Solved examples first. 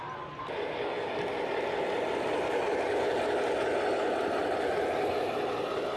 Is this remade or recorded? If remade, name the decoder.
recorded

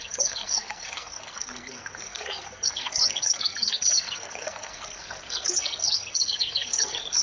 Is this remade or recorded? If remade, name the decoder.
remade, codec, SNAC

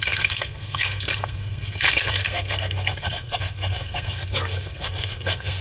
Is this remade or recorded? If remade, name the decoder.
remade, codec, SNAC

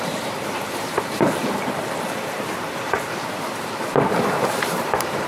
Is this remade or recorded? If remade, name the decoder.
remade, vocoder, BigVGAN v2